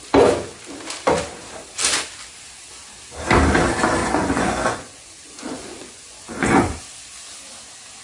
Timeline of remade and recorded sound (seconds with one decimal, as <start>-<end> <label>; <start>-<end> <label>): 0.0-4.0 recorded; 4.0-6.8 remade; 6.8-8.0 recorded